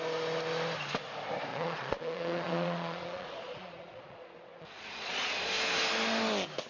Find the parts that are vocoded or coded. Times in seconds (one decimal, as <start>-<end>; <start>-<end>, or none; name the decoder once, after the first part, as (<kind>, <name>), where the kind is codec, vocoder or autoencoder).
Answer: 1.5-5.5 (vocoder, Vocos)